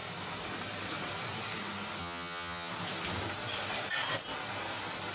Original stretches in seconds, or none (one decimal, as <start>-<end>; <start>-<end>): 0.0-2.0; 2.7-5.1